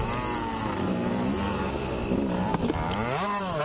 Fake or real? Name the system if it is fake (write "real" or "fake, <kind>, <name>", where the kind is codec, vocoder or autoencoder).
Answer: real